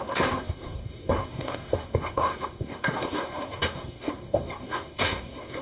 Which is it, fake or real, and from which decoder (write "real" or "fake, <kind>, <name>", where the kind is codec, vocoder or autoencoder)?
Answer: fake, codec, SNAC